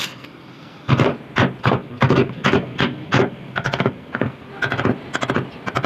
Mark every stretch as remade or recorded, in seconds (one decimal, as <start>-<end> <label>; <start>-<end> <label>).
0.0-1.1 remade; 1.1-1.6 recorded; 1.6-4.5 remade; 4.5-5.9 recorded